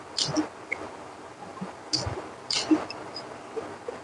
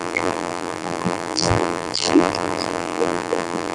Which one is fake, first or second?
second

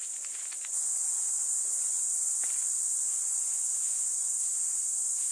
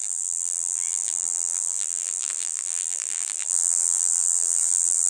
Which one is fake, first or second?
second